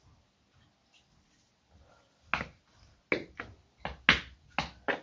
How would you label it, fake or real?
real